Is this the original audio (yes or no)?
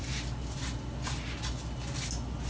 yes